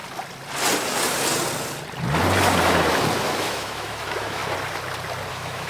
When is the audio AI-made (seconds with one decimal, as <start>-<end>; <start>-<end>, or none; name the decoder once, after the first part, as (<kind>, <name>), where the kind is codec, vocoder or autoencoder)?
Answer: 3.4-4.4 (autoencoder, DAC-VAE); 5.3-5.7